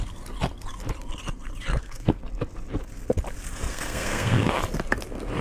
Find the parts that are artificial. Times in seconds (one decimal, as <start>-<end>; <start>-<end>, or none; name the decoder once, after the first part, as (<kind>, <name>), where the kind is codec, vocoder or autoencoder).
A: 1.7-2.2 (codec, SNAC); 3.7-4.5